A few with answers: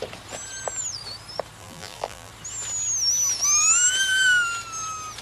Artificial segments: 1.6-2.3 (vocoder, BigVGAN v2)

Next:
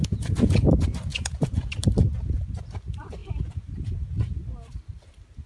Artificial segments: 0.0-0.7 (vocoder, Vocos); 1.1-1.7